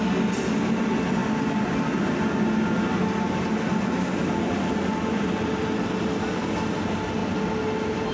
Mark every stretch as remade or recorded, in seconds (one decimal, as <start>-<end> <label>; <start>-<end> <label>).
0.0-8.1 recorded